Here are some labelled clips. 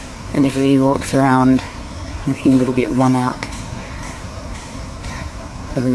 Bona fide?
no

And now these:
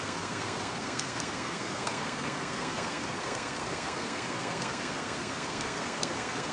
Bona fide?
no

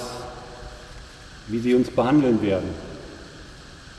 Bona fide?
yes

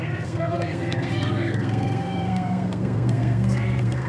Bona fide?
no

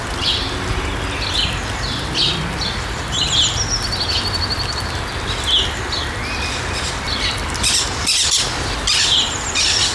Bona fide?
yes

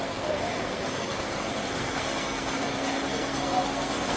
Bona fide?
no